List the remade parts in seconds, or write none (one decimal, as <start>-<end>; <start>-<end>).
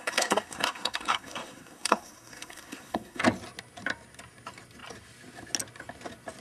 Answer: 0.0-3.2